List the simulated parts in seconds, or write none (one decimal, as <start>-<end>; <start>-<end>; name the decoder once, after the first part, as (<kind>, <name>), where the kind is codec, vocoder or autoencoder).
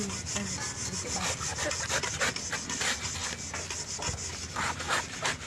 none